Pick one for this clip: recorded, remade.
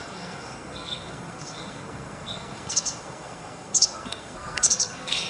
remade